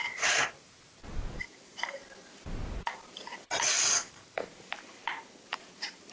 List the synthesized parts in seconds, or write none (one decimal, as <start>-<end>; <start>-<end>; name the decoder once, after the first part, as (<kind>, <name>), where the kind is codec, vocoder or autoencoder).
0.0-2.0 (vocoder, BigVGAN v2); 3.6-5.0; 5.5-6.1